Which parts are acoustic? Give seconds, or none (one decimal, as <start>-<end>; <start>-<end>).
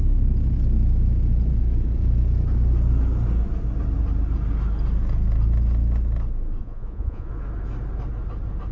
0.0-6.6; 7.3-8.7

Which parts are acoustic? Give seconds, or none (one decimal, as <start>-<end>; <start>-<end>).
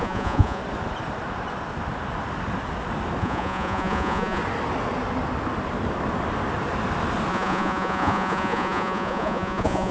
0.6-3.2; 4.4-7.3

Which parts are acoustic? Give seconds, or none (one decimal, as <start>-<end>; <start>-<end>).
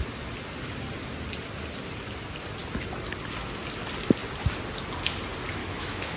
0.0-5.6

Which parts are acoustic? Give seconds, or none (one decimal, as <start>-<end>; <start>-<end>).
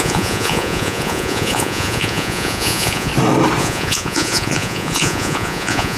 3.1-3.6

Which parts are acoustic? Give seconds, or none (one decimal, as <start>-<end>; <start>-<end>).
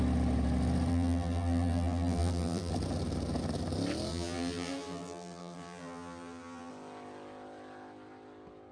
0.0-0.9; 2.7-4.1; 6.7-8.7